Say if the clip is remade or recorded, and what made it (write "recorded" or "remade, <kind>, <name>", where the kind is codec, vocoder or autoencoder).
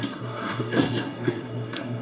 remade, codec, SNAC